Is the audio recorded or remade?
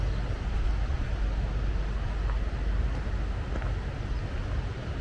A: recorded